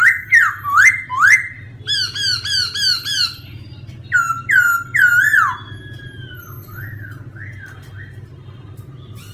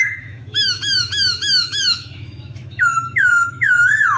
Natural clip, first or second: first